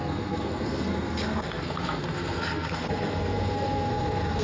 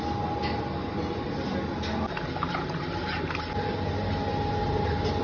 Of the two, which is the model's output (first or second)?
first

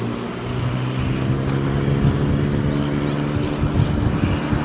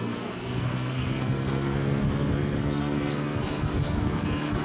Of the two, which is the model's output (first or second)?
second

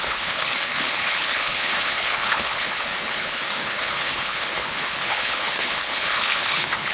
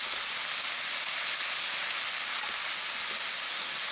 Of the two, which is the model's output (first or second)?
first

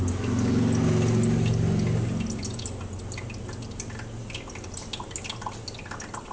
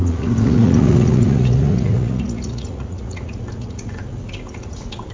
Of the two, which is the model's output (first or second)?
second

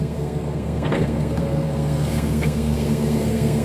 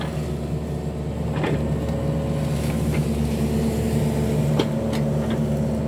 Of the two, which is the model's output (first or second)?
first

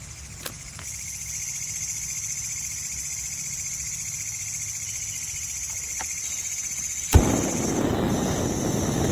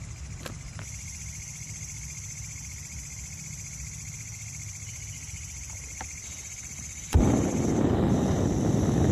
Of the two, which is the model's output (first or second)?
second